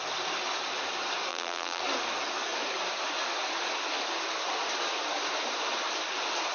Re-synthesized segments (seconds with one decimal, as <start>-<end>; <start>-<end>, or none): 1.3-1.8